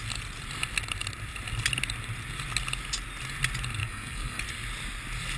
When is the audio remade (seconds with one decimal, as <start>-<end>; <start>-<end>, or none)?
3.8-4.4